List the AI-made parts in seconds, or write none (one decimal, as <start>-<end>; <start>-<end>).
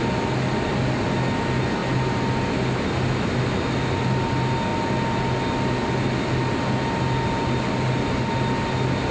none